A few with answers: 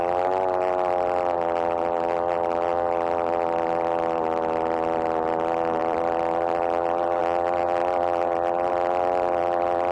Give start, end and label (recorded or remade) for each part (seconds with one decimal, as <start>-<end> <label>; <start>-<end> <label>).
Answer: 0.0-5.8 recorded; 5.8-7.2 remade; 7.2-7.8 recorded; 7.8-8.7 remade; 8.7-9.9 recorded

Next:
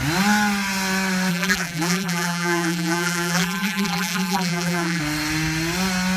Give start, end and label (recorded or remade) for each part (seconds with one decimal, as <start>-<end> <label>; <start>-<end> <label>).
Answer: 0.0-1.3 recorded; 1.3-5.0 remade; 5.0-6.2 recorded

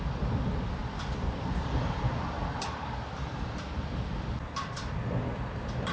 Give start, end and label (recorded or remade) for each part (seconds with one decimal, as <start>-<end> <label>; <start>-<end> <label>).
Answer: 0.0-5.9 remade